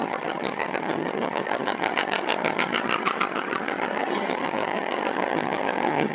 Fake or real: fake